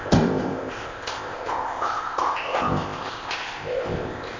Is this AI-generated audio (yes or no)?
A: yes